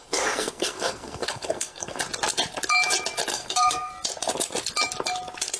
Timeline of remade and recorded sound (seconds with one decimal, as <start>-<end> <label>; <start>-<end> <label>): 0.0-2.0 remade; 2.0-3.3 recorded; 3.3-3.9 remade; 3.9-5.6 recorded